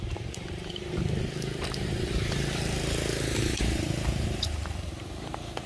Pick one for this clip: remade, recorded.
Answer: remade